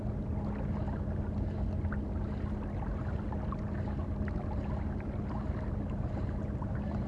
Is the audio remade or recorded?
recorded